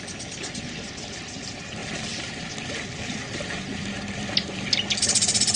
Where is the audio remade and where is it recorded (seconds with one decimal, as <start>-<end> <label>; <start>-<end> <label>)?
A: 0.0-5.6 recorded